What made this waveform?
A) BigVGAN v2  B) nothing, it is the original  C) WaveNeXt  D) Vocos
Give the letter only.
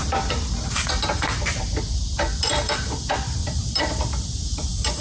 A